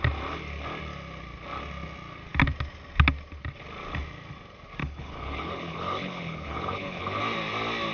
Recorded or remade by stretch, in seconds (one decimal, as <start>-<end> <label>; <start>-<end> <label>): 0.0-4.8 recorded; 4.8-7.2 remade; 7.2-7.9 recorded